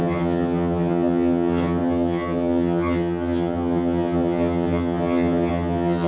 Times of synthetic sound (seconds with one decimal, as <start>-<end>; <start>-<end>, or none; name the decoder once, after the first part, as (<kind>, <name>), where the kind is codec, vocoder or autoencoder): 0.0-6.1 (vocoder, HiFi-GAN)